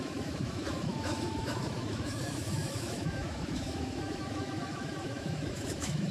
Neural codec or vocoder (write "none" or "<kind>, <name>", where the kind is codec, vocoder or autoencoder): autoencoder, DAC-VAE